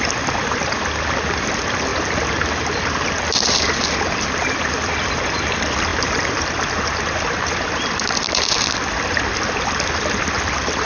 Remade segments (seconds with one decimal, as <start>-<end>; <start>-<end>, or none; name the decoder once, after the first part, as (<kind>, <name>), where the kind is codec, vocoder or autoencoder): 0.0-1.9 (vocoder, BigVGAN v2); 3.5-10.9